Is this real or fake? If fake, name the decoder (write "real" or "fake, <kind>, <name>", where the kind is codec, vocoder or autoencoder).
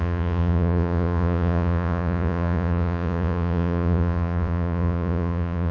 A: fake, vocoder, Vocos